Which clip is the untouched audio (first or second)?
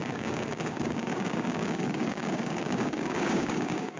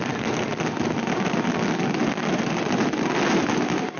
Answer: second